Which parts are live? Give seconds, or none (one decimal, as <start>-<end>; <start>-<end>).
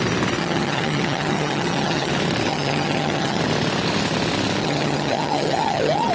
0.0-0.4; 2.1-2.5; 3.4-4.6